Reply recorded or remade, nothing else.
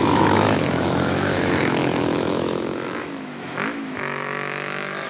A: remade